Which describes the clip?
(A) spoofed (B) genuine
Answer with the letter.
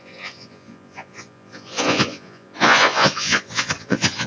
A